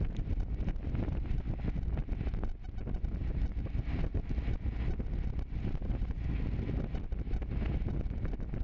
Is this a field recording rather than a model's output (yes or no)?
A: yes